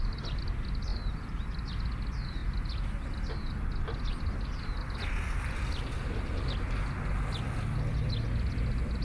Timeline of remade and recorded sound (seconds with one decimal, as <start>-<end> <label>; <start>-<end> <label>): 0.0-9.0 recorded